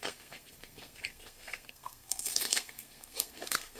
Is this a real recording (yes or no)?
no